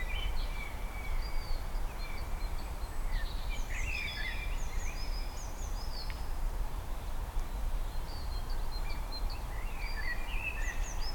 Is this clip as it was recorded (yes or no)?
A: no